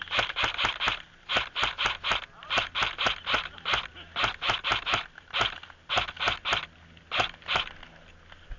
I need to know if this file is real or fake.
real